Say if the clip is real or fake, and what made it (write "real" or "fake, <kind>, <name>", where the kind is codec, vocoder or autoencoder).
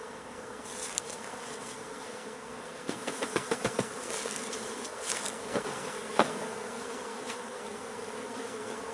fake, codec, SNAC